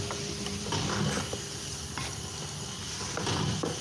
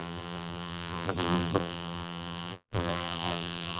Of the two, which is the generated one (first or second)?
second